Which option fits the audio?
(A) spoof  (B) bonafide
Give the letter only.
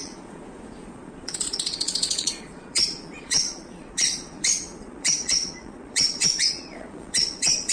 A